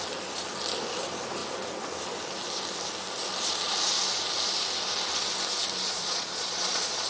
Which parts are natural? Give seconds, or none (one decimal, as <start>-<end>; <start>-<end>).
0.0-5.8